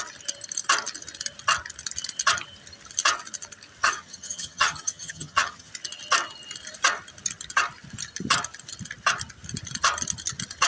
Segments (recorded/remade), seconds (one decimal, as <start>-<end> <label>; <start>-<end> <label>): 0.0-3.8 recorded; 3.8-5.7 remade; 5.7-10.7 recorded